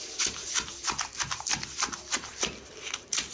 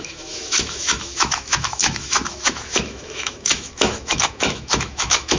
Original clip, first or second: first